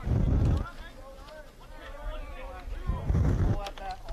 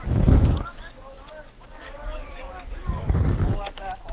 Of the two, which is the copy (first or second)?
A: second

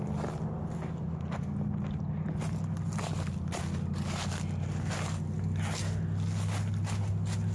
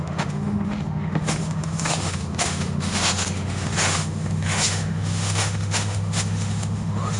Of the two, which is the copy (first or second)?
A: second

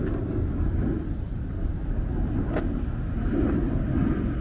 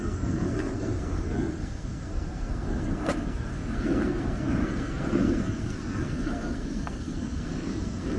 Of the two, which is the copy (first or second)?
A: second